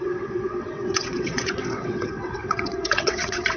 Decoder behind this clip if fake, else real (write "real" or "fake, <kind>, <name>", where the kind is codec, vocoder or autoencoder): fake, vocoder, WaveNeXt